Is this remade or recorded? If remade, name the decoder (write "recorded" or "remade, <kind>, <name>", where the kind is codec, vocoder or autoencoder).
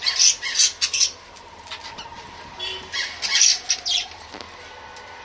recorded